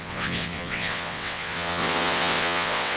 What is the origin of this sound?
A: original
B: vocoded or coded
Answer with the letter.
B